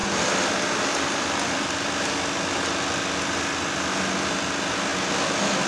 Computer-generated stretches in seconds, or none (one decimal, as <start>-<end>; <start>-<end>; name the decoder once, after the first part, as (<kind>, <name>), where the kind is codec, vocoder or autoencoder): none